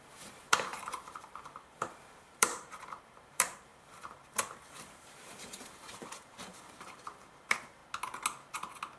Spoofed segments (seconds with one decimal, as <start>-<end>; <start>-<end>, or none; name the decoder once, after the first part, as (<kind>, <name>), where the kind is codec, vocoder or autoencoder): 0.0-7.8 (vocoder, BigVGAN v2)